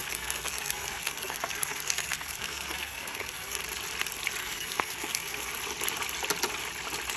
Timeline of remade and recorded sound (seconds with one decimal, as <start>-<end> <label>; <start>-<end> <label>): 0.0-3.6 remade; 3.6-4.4 recorded; 4.4-5.5 remade; 5.5-7.2 recorded